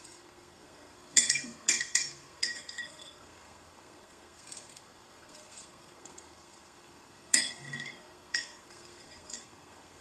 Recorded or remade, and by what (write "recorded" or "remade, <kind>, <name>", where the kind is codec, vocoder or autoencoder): remade, codec, SNAC